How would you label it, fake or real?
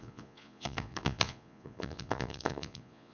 fake